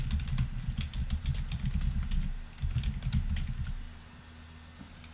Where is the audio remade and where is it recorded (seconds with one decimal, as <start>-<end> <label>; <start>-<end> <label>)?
0.0-5.1 recorded